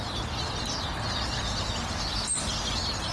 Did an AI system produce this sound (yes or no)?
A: no